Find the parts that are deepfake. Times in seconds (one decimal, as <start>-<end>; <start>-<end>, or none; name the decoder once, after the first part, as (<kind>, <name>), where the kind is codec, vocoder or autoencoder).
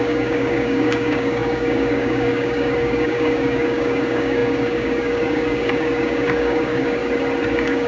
0.0-7.0 (codec, DAC); 7.5-7.9